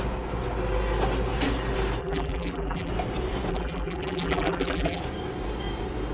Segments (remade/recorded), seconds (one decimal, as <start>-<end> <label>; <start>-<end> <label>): 0.0-2.0 recorded; 2.0-2.9 remade; 2.9-3.5 recorded; 3.5-5.0 remade; 5.0-6.1 recorded